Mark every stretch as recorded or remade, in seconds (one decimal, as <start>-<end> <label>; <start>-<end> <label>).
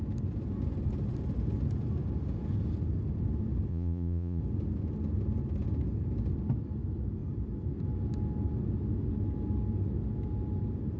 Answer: 0.0-3.7 recorded; 3.7-4.4 remade; 4.4-11.0 recorded